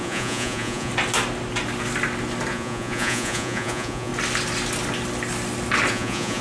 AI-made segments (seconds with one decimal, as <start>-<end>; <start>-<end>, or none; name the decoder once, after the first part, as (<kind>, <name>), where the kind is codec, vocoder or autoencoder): 0.0-0.9 (vocoder, Vocos); 2.5-4.1; 5.9-6.4